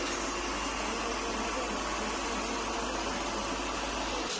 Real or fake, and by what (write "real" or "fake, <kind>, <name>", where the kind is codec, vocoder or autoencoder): real